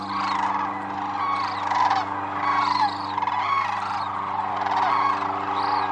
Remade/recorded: recorded